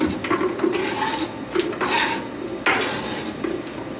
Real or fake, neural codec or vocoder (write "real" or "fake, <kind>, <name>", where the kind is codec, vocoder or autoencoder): real